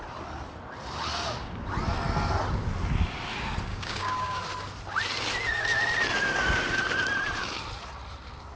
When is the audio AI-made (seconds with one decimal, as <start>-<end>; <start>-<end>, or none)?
3.7-4.4

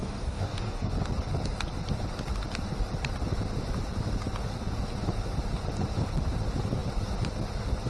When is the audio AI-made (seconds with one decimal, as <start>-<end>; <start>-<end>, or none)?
0.0-0.9